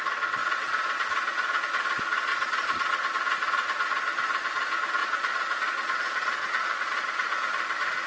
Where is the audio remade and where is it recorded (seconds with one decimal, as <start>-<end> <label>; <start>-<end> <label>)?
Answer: 0.0-0.4 recorded; 0.4-1.6 remade; 1.6-2.3 recorded; 2.3-2.9 remade; 2.9-5.0 recorded; 5.0-7.3 remade; 7.3-8.1 recorded